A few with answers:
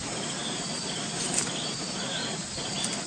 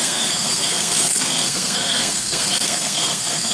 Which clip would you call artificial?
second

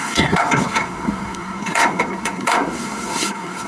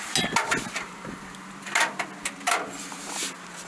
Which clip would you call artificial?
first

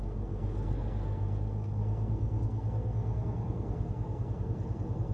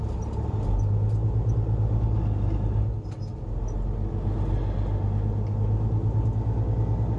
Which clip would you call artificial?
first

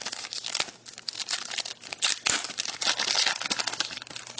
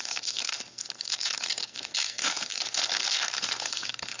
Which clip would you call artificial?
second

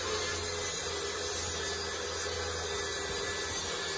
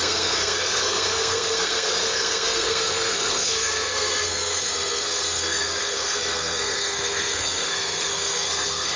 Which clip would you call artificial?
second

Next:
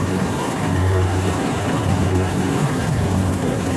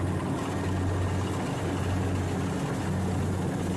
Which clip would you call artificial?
first